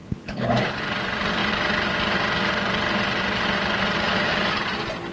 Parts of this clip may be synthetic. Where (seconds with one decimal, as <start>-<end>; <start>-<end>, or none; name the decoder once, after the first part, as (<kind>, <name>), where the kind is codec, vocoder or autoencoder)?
0.0-0.8 (codec, HILCodec)